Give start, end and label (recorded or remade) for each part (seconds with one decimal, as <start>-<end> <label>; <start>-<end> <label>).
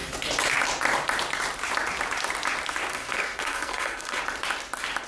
0.0-2.9 recorded; 2.9-4.2 remade; 4.2-5.1 recorded